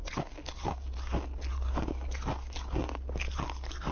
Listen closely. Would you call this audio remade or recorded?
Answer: recorded